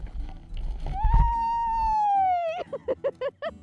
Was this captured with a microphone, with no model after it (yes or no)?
yes